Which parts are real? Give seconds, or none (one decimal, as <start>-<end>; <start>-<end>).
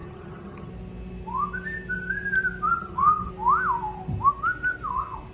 0.7-2.7; 3.3-5.3